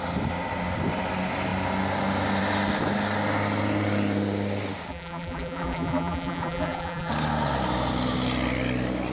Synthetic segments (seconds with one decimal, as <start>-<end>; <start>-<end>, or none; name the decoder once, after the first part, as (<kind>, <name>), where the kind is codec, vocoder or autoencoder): 4.9-7.1 (vocoder, BigVGAN v2)